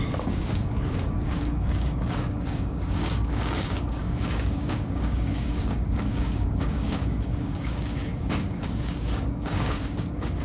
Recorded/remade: remade